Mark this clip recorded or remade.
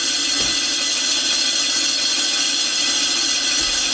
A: recorded